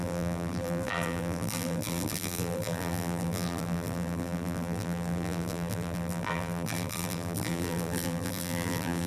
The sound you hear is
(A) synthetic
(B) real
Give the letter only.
A